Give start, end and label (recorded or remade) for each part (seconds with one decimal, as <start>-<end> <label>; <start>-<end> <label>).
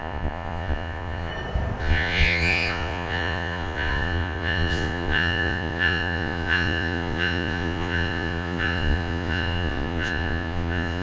0.0-1.3 remade; 1.3-1.8 recorded; 1.8-11.0 remade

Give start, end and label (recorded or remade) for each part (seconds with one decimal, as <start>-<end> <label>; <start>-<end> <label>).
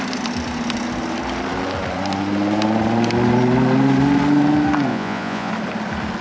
0.0-4.9 recorded; 4.9-5.5 remade; 5.5-6.2 recorded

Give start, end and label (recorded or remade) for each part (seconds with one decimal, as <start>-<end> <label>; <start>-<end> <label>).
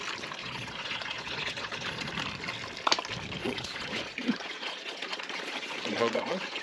0.0-0.4 recorded; 0.4-2.1 remade; 2.1-3.4 recorded; 3.4-6.6 remade